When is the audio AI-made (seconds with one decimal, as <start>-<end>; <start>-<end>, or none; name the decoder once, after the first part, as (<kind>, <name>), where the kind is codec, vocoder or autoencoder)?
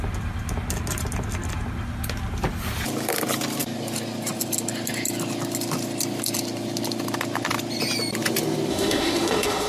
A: 8.7-9.7 (autoencoder, DAC-VAE)